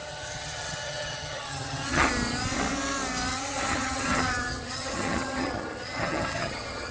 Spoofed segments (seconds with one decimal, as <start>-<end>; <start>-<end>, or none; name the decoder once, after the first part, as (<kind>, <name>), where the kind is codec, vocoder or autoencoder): 0.0-2.1 (vocoder, HiFi-GAN); 3.3-6.9